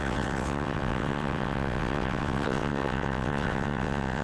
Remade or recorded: remade